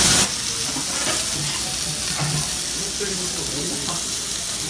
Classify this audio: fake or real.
real